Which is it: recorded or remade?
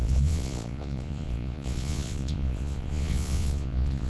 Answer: remade